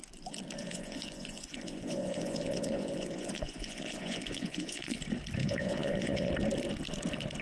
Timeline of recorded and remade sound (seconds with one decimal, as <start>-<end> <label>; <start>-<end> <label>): 0.0-0.6 recorded; 0.6-5.0 remade; 5.0-5.4 recorded; 5.4-6.3 remade; 6.3-7.4 recorded